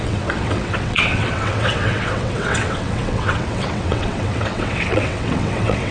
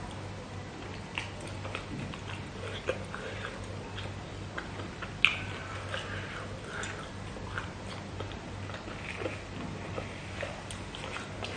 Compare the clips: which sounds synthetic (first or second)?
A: first